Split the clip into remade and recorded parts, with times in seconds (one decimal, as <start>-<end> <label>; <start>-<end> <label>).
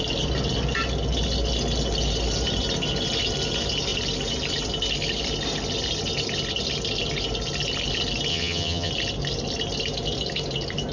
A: 0.0-8.3 recorded; 8.3-8.9 remade; 8.9-10.9 recorded